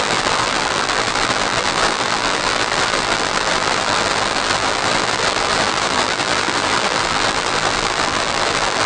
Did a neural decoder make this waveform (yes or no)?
yes